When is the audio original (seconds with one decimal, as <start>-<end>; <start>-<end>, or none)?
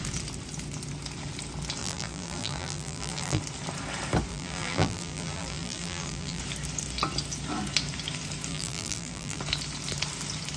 0.0-1.8; 3.4-4.3; 6.4-8.5; 9.4-10.6